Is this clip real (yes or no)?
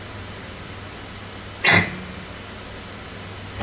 yes